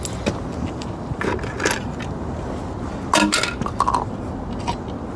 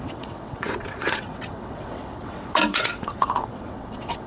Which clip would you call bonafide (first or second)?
first